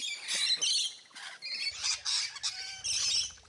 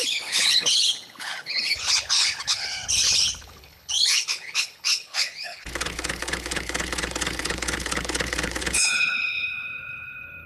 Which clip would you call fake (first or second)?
second